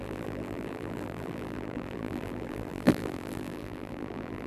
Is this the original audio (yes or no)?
no